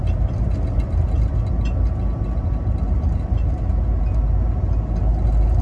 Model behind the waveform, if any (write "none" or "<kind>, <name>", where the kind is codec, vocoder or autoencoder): none